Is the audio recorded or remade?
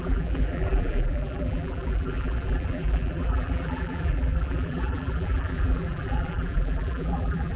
remade